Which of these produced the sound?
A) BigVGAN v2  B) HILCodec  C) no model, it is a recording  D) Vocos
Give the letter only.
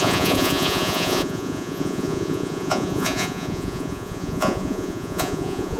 D